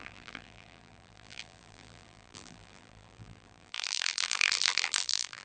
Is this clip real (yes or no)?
no